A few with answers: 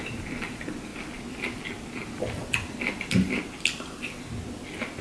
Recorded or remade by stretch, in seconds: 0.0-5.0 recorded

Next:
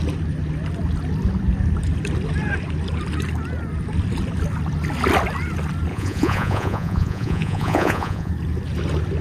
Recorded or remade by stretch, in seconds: 0.0-5.9 recorded; 5.9-8.3 remade; 8.3-9.2 recorded

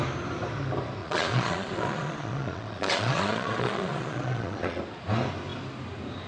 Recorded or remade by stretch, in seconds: 0.0-1.0 recorded; 1.0-4.8 remade; 4.8-6.3 recorded